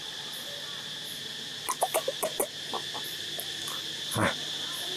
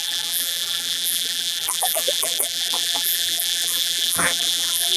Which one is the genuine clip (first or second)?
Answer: first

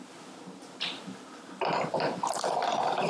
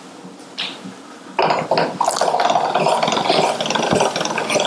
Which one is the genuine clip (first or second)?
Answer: second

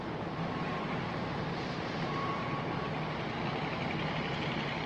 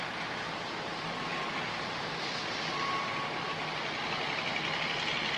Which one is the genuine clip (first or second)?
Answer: second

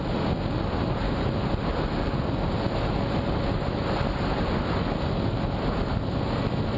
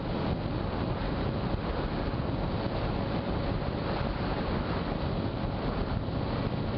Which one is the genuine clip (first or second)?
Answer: first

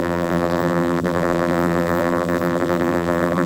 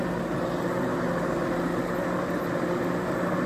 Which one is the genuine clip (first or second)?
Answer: second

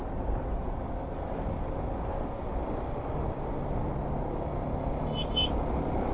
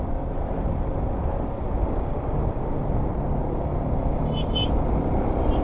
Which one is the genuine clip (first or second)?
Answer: first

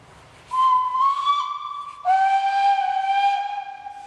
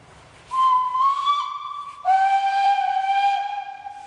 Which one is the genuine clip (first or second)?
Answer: first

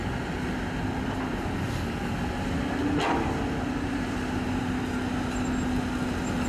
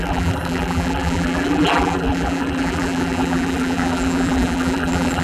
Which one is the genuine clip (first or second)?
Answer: first